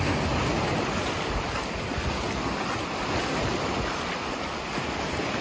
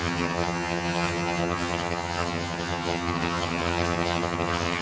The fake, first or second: second